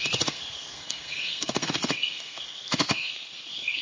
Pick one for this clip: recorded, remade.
remade